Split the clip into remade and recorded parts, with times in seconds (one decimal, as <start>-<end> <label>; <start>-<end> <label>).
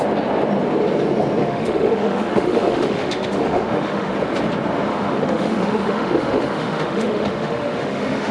0.0-1.4 recorded; 1.4-4.1 remade; 4.1-4.9 recorded; 4.9-8.3 remade